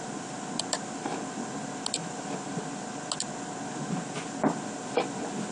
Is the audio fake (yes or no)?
no